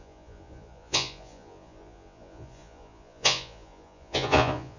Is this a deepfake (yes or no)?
yes